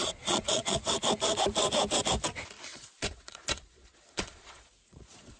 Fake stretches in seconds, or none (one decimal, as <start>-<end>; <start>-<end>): 0.0-0.8; 2.7-5.4